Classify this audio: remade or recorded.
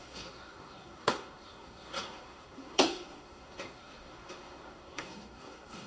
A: remade